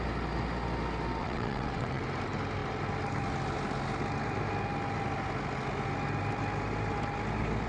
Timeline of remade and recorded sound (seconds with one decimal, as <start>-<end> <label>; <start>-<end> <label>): 0.0-1.2 recorded; 1.2-2.0 remade; 2.0-7.7 recorded

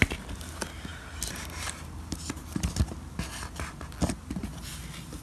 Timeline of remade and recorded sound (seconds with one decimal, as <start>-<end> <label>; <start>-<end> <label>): 0.0-5.2 recorded

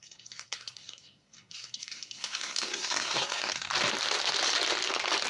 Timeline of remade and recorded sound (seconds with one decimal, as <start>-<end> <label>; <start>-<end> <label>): 0.0-3.7 remade; 3.7-5.3 recorded